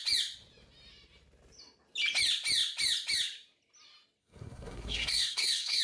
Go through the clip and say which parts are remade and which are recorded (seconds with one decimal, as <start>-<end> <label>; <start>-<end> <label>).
0.0-4.2 recorded; 4.2-5.8 remade